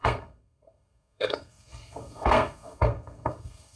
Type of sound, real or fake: fake